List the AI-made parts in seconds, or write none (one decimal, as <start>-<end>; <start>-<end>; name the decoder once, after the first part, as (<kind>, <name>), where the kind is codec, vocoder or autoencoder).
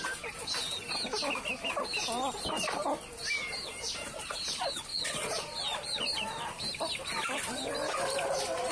4.9-5.4 (vocoder, Vocos)